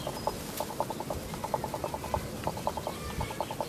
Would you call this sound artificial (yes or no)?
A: no